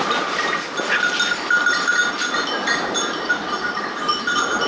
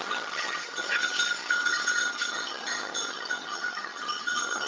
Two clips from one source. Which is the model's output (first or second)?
second